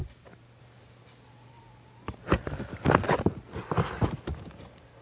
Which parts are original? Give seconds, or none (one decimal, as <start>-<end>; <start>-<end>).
0.6-5.0